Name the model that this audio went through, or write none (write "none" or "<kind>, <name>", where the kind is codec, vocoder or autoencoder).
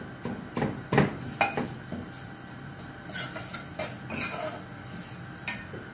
none